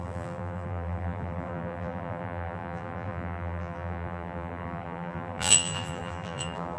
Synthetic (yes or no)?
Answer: yes